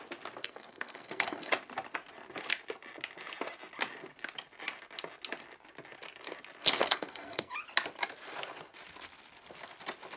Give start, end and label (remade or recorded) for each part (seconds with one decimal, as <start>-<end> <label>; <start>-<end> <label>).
0.0-0.4 recorded; 0.4-1.5 remade; 1.5-6.8 recorded; 6.8-7.5 remade; 7.5-10.2 recorded